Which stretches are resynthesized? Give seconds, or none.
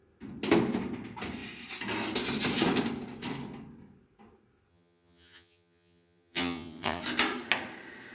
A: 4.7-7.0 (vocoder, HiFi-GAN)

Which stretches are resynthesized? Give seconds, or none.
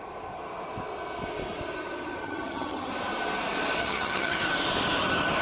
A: 2.2-2.9 (vocoder, HiFi-GAN); 3.8-4.4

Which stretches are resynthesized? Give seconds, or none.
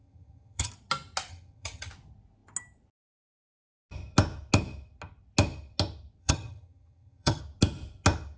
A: 0.0-0.7 (vocoder, HiFi-GAN); 1.3-1.9; 6.2-7.4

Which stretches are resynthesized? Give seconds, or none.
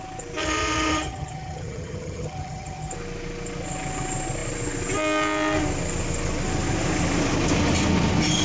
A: 0.4-2.9 (vocoder, HiFi-GAN)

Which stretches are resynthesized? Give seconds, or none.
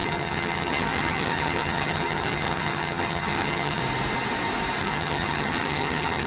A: 0.0-3.8 (vocoder, HiFi-GAN); 4.8-6.3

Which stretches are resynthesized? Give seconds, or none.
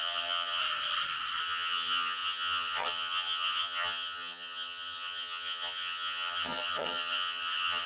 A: 0.0-0.6 (vocoder, HiFi-GAN); 1.4-7.9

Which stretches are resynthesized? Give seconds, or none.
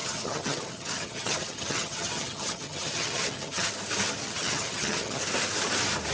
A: 0.0-3.7 (vocoder, HiFi-GAN); 4.2-5.2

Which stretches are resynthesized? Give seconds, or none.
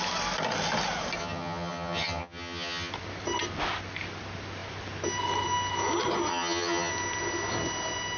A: 1.2-2.9 (vocoder, HiFi-GAN); 6.3-6.9